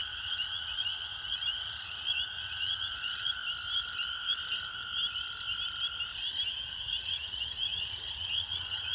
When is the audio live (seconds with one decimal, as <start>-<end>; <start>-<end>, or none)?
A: 3.4-6.7